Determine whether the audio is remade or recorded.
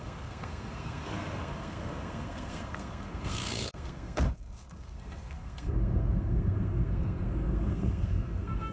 remade